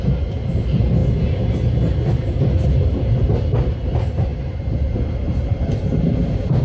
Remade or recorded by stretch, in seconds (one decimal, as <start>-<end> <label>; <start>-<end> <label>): 0.0-1.0 remade; 1.0-2.2 recorded; 2.2-6.6 remade